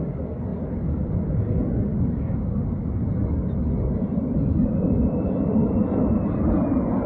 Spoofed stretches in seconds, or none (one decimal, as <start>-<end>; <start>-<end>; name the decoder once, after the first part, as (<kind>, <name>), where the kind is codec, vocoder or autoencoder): 0.5-1.1 (vocoder, BigVGAN v2)